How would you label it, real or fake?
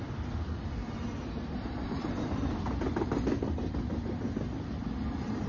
real